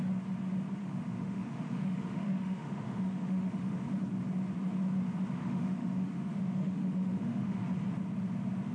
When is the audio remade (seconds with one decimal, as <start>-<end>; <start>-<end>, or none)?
0.8-3.8; 5.4-7.6